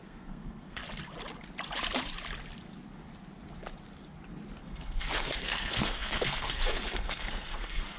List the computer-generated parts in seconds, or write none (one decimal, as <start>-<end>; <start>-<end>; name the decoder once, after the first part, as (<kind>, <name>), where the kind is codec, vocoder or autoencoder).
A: 0.0-0.8 (codec, SNAC); 4.6-8.0